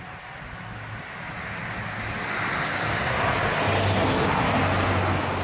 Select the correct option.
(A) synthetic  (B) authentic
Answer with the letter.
B